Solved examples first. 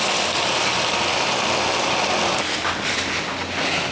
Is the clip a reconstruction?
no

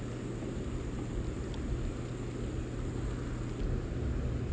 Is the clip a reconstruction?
no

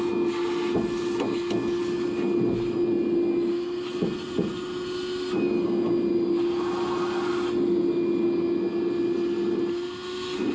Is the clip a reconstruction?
no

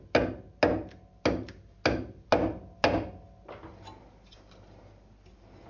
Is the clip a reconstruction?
no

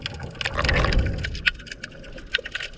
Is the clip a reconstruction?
no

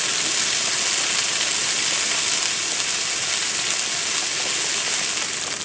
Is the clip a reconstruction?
no